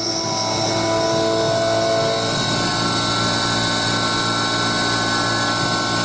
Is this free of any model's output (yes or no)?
yes